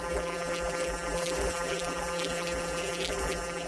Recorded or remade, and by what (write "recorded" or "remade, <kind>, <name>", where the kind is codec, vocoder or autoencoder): remade, vocoder, BigVGAN v2